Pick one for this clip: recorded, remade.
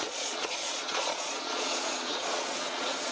remade